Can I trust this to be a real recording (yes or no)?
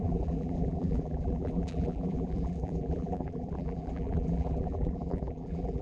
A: no